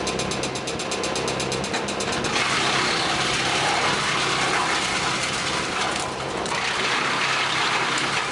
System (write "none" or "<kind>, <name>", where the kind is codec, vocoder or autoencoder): none